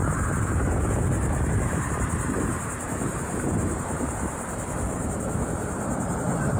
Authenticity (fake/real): fake